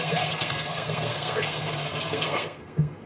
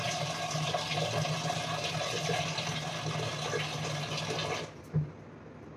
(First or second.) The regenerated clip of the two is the first